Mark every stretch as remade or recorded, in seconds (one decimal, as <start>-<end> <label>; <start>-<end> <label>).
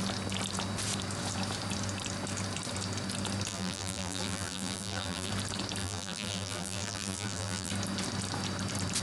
0.0-3.5 recorded; 3.5-5.3 remade; 5.3-5.8 recorded; 5.8-7.7 remade; 7.7-9.0 recorded